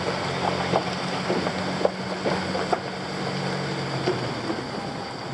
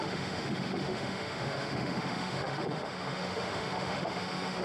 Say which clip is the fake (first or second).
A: second